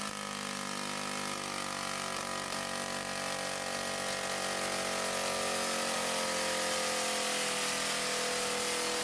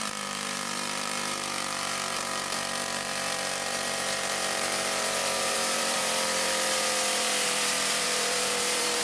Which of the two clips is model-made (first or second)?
second